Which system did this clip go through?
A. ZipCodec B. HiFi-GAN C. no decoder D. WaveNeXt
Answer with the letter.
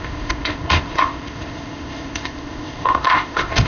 A